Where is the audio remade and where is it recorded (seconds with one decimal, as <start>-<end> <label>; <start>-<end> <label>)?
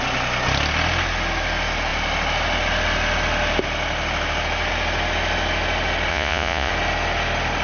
0.0-6.1 recorded; 6.1-6.7 remade; 6.7-7.6 recorded